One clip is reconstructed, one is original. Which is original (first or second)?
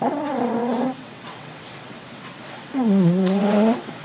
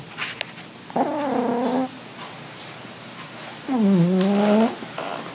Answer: second